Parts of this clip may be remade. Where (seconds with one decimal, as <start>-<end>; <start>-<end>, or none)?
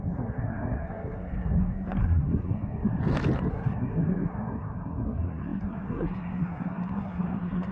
0.0-3.0; 3.5-7.7